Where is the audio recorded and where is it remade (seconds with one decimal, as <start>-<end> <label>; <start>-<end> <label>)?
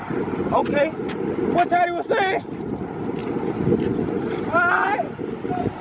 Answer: 0.0-5.8 recorded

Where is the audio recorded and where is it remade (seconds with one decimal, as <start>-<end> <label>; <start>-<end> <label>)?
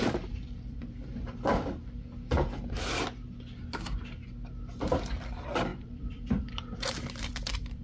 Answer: 0.0-1.1 remade; 1.1-5.1 recorded; 5.1-7.8 remade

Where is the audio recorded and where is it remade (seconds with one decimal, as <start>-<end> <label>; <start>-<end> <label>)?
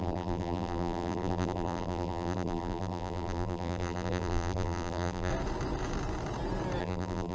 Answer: 0.0-5.3 remade; 5.3-6.8 recorded; 6.8-7.3 remade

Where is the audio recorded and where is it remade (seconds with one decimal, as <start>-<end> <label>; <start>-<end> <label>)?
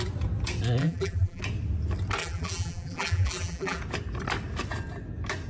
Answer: 0.0-0.8 recorded; 0.8-1.4 remade; 1.4-2.2 recorded; 2.2-3.8 remade; 3.8-5.5 recorded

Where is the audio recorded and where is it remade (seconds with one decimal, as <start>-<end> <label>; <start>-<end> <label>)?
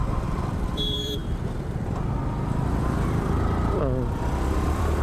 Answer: 0.0-1.2 remade; 1.2-3.1 recorded; 3.1-5.0 remade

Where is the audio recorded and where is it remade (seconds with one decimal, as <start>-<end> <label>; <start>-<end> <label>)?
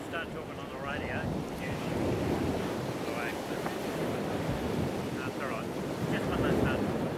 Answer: 0.0-0.6 recorded; 0.6-2.5 remade; 2.5-7.2 recorded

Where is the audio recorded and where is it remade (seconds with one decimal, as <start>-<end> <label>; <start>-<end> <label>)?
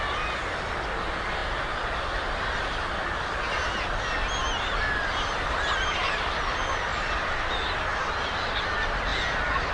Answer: 0.0-6.9 recorded; 6.9-7.5 remade; 7.5-8.0 recorded; 8.0-8.6 remade; 8.6-9.7 recorded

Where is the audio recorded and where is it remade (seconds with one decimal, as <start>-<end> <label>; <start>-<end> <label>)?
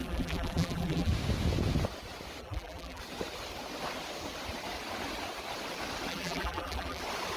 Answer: 0.0-1.1 remade; 1.1-2.4 recorded; 2.4-3.0 remade; 3.0-6.1 recorded; 6.1-7.0 remade; 7.0-7.4 recorded